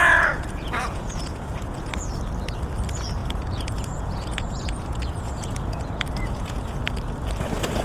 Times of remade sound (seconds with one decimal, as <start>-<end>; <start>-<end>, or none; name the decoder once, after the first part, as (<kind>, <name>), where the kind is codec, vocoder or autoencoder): 0.0-1.9 (vocoder, Vocos); 3.2-6.8